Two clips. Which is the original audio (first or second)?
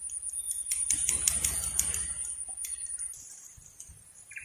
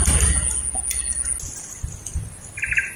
second